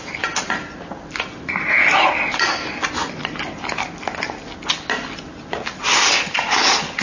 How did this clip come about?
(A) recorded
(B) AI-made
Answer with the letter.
A